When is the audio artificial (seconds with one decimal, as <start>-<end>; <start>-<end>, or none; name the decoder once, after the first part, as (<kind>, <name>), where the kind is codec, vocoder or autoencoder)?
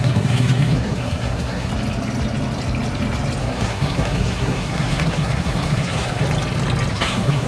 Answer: 0.0-1.7 (codec, SNAC); 3.4-6.2; 6.9-7.5